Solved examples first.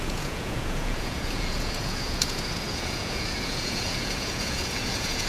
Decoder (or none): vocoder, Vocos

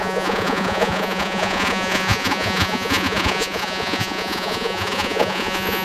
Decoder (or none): vocoder, Vocos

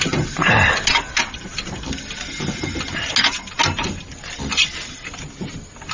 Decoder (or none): none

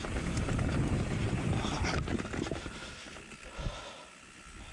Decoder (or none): none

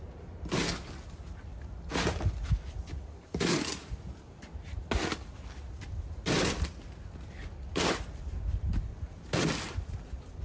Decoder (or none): none